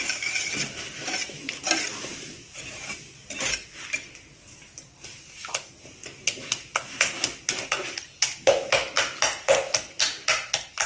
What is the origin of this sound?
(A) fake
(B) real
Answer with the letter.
B